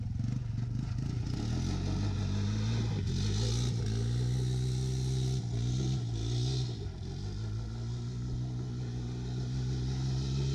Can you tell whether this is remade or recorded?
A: recorded